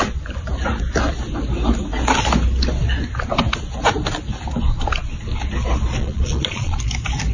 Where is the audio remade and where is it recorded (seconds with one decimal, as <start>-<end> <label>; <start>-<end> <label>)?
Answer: 0.0-6.0 recorded; 6.0-6.8 remade; 6.8-7.3 recorded